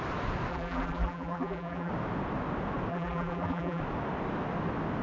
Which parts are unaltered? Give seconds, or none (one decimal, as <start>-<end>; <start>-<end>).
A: 0.0-0.5; 1.9-2.9; 3.8-5.0